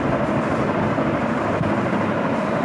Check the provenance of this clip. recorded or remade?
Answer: recorded